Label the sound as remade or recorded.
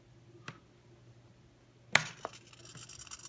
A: recorded